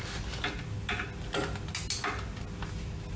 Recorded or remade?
recorded